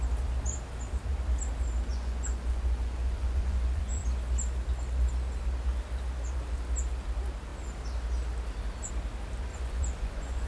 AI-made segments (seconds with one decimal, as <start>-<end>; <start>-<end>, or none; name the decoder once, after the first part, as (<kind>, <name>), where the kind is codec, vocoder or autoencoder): 1.9-4.0 (vocoder, Vocos); 9.5-10.5